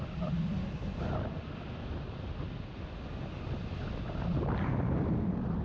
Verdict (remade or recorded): recorded